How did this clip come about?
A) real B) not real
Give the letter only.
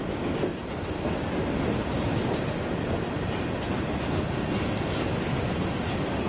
A